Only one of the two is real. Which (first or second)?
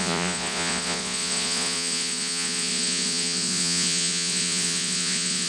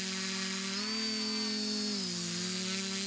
second